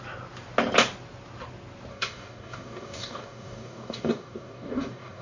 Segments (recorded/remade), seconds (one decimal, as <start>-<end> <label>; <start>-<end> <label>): 0.0-1.9 recorded; 1.9-5.2 remade